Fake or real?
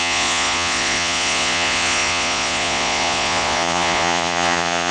fake